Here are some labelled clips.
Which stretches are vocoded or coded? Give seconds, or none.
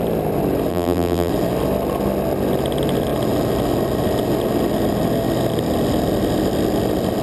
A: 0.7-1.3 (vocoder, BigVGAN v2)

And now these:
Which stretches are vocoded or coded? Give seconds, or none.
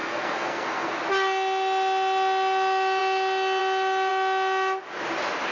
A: 0.0-0.9 (codec, SNAC)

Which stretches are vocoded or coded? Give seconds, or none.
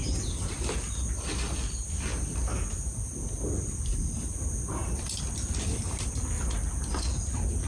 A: 0.0-0.8 (vocoder, BigVGAN v2); 4.8-6.1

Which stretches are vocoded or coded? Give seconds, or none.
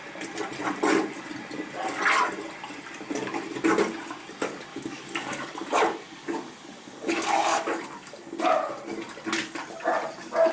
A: 4.7-8.4 (codec, DAC)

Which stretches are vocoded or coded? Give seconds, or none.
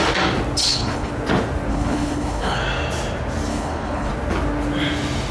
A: 0.6-1.1 (codec, HILCodec); 1.7-2.6; 3.5-4.1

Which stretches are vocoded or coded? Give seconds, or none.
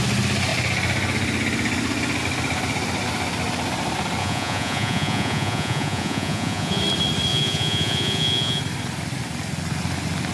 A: 4.2-6.8 (vocoder, Vocos); 7.3-8.6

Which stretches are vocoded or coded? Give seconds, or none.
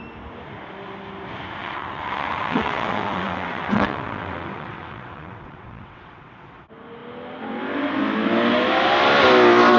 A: 1.6-6.6 (vocoder, WaveNeXt)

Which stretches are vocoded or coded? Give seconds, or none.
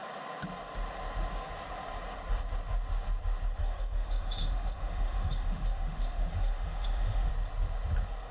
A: 3.6-7.3 (autoencoder, DAC-VAE)